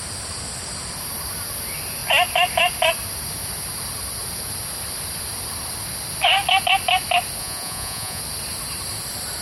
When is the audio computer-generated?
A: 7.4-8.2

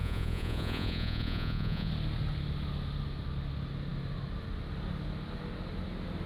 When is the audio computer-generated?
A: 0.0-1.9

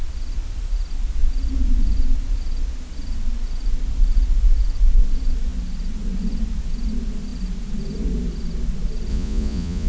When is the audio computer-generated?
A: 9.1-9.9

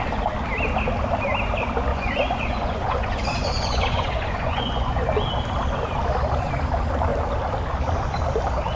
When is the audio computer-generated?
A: 1.9-5.0